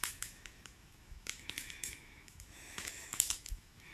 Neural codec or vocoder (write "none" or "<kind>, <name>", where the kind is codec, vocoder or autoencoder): autoencoder, DAC-VAE